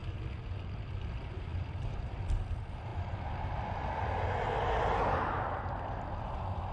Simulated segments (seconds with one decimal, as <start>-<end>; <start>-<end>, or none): 1.5-2.5